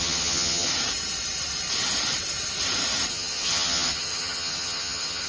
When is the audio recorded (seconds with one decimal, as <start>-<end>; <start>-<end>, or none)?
0.7-3.1

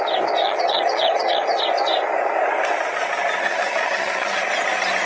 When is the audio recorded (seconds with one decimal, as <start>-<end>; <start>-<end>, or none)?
0.0-0.4; 1.6-3.4; 4.4-5.1

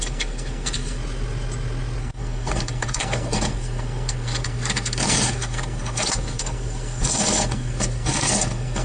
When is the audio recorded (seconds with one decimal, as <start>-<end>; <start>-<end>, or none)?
1.0-2.0

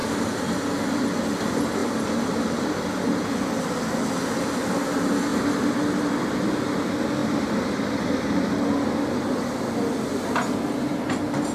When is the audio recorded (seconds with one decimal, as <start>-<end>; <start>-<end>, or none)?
0.8-1.8; 3.4-7.2; 8.2-11.5

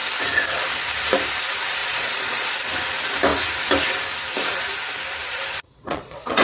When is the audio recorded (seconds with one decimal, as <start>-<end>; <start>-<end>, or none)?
0.0-1.8; 2.5-5.2

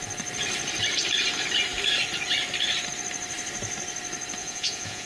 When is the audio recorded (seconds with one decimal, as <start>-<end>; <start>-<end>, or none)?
0.0-4.4

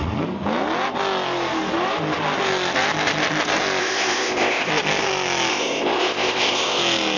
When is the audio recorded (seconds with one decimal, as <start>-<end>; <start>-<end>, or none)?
0.0-3.8; 4.7-5.5; 6.8-7.2

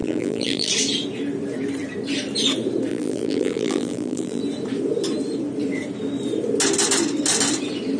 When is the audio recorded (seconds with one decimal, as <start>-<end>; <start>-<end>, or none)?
0.7-2.9; 4.4-8.0